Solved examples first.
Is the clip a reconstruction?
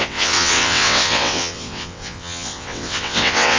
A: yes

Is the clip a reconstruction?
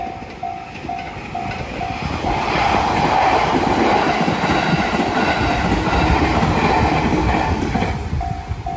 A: no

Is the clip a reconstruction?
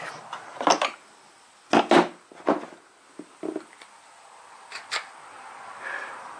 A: no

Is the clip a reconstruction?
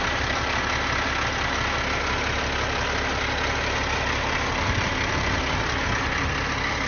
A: no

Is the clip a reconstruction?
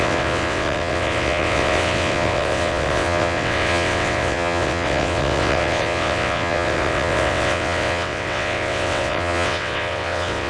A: yes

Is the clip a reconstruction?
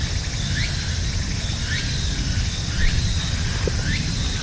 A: no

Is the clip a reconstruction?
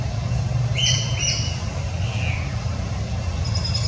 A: no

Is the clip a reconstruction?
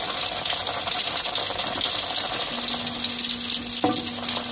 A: no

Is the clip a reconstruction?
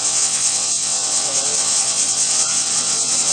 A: yes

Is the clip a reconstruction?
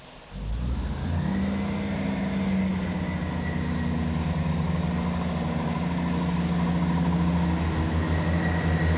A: no